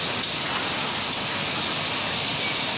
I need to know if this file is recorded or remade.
recorded